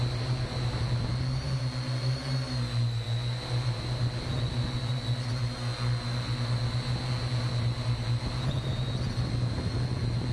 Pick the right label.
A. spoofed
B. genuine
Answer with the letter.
B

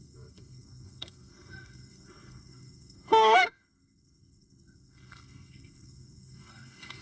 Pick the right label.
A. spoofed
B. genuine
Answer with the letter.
A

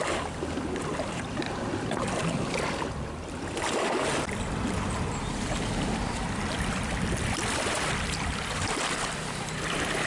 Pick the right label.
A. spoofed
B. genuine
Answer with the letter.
A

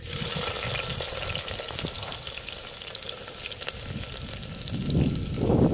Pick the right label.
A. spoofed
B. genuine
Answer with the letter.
B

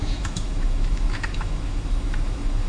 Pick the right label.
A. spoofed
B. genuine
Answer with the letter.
A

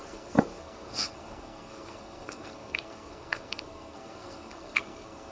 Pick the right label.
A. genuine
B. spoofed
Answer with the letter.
B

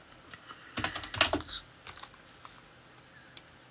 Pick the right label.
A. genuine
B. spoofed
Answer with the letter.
A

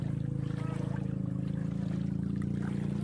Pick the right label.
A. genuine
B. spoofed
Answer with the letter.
A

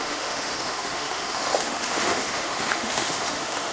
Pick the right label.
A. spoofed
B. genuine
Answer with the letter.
A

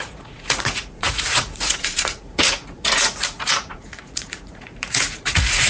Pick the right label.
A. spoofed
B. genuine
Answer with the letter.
A